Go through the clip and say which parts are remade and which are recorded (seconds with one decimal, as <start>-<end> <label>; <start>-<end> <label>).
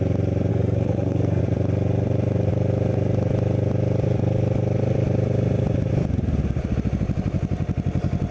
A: 0.0-0.5 recorded; 0.5-1.4 remade; 1.4-8.3 recorded